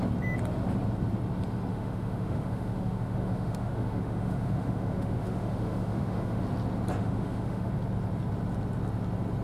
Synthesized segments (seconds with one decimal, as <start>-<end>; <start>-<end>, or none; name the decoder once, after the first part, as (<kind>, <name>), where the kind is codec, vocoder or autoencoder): 1.7-6.4 (autoencoder, DAC-VAE); 7.0-7.7